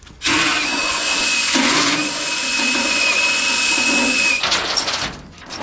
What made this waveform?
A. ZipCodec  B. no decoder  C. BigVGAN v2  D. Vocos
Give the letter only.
D